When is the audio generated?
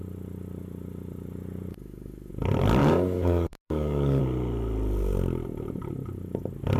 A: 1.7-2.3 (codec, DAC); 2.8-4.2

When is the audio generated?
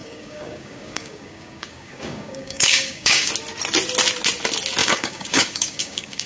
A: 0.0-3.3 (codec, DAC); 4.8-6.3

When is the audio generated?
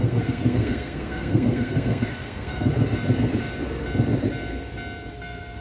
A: 0.0-2.7 (codec, SNAC); 5.1-5.6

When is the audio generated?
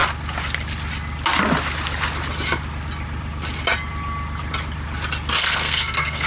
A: 5.4-6.3 (codec, SNAC)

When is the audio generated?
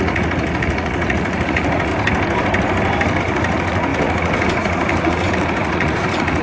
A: 0.0-1.9 (vocoder, Vocos); 3.2-6.4